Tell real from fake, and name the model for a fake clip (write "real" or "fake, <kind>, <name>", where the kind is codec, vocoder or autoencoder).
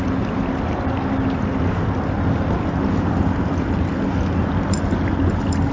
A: real